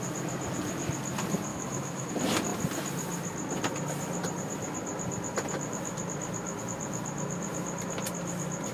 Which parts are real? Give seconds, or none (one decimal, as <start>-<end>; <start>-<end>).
0.0-1.5; 2.1-8.7